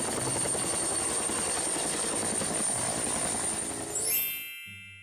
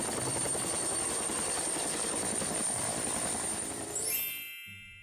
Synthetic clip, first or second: second